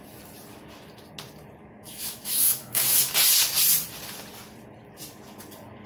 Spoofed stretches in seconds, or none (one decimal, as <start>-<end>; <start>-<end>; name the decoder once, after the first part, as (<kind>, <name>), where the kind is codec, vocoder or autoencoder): 1.6-3.1 (autoencoder, DAC-VAE)